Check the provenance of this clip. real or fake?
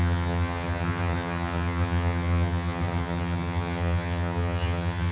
fake